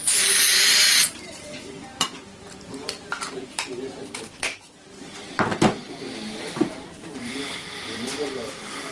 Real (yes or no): no